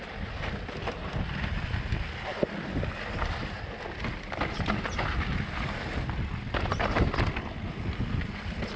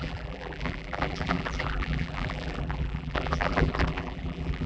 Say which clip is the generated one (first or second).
second